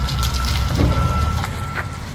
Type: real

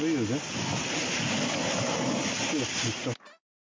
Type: real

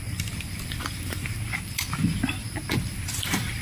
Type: real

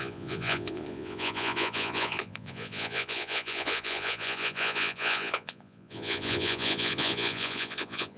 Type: fake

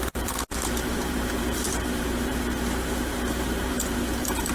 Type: fake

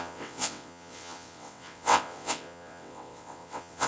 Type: fake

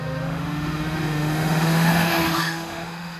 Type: fake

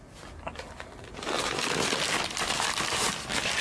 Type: real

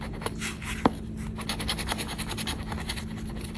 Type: real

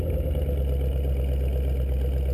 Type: real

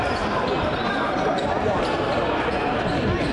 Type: fake